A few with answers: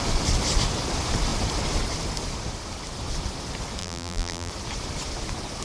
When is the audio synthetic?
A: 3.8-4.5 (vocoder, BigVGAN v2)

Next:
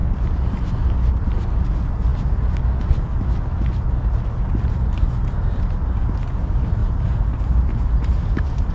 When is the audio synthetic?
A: 6.8-8.7 (vocoder, BigVGAN v2)

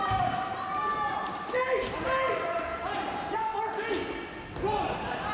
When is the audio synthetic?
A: 0.0-3.5 (vocoder, BigVGAN v2); 4.6-5.3

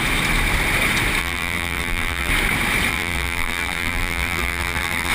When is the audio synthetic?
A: 1.2-2.3 (vocoder, BigVGAN v2); 2.9-5.1

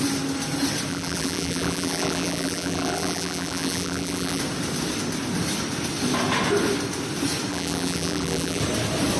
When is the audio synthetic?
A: 0.9-4.4 (vocoder, BigVGAN v2); 7.5-8.6